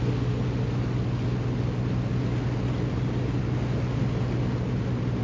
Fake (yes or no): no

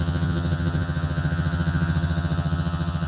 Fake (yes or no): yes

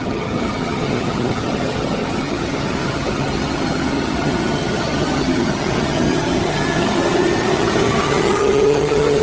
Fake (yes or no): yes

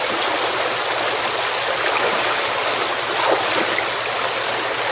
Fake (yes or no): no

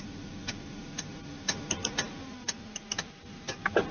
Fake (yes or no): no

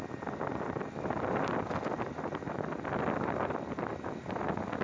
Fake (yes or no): no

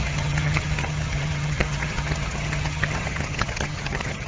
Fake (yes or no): yes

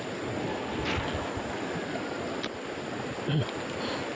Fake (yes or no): no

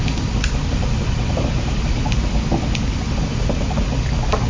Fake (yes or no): no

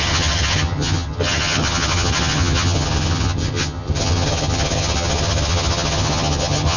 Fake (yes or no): yes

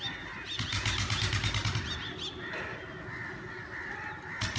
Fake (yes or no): no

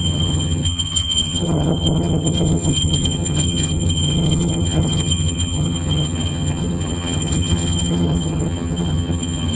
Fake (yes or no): yes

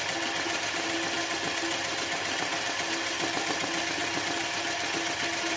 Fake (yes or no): no